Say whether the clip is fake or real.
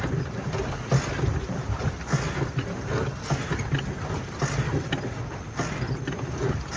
real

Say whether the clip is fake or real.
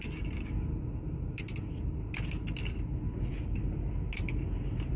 real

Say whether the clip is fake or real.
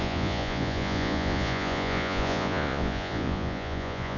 fake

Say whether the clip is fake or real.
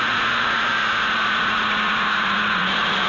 fake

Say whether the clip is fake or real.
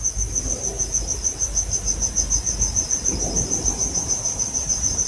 real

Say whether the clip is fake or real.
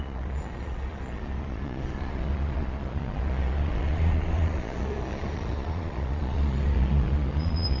fake